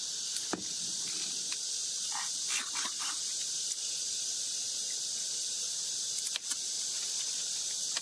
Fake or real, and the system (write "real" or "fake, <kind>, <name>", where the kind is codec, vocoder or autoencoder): real